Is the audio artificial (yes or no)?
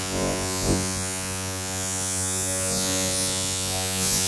yes